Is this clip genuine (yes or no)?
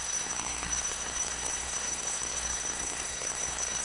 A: no